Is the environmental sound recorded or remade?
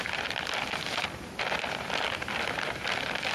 recorded